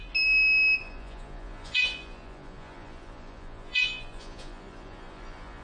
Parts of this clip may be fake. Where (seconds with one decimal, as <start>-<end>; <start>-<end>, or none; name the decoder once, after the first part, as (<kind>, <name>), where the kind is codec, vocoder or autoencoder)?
0.8-5.6 (vocoder, Vocos)